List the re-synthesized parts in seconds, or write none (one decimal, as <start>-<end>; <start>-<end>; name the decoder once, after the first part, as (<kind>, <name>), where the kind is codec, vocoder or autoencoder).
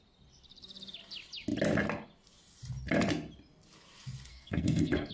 4.3-5.1 (codec, SNAC)